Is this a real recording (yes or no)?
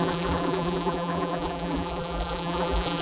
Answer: no